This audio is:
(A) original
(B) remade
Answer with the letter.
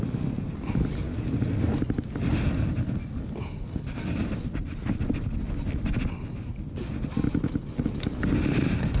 A